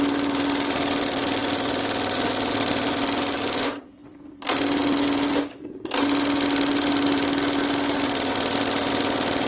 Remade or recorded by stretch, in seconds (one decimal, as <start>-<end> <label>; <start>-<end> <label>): 0.0-9.5 recorded